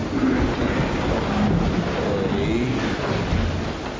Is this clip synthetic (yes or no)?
no